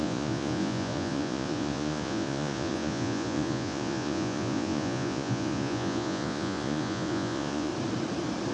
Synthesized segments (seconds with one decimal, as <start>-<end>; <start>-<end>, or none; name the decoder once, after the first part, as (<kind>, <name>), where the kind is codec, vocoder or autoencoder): 0.0-7.7 (vocoder, Vocos)